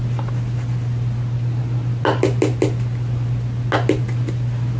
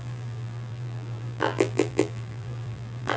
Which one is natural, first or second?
first